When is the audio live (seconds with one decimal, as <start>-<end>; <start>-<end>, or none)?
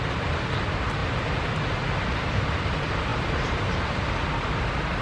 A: 0.0-5.0